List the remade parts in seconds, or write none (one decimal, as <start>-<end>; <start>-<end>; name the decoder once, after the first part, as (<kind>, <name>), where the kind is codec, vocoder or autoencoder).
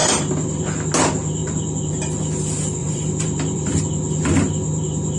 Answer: 0.0-0.6 (vocoder, BigVGAN v2); 1.4-1.9; 2.8-3.8